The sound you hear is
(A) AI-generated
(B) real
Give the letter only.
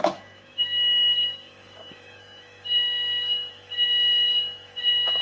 A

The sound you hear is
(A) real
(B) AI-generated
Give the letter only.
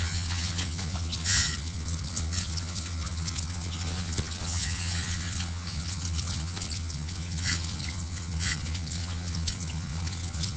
B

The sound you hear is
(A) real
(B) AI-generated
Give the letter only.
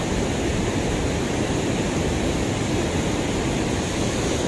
A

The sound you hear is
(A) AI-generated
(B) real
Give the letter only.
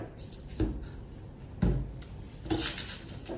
B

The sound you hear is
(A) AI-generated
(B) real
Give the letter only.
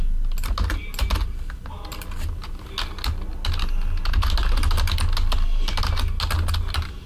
B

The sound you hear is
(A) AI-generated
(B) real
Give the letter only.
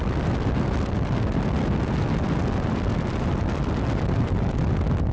B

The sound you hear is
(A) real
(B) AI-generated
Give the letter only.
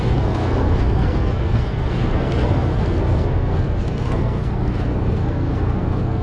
B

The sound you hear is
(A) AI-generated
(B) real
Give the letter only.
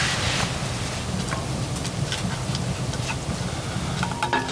B